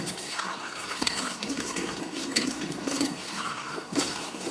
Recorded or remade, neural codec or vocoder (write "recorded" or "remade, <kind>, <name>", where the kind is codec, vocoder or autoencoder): remade, codec, SNAC